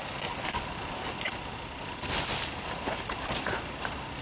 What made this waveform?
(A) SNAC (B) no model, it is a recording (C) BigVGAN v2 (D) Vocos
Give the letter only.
B